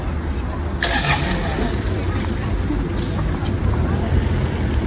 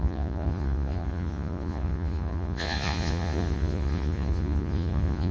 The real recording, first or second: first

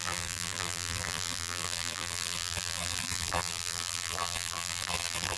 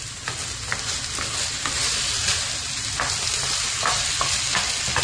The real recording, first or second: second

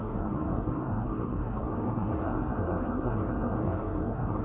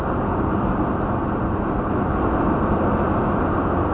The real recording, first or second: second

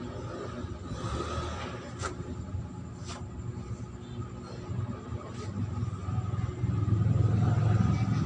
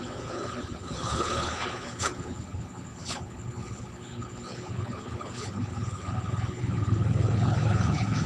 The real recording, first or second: first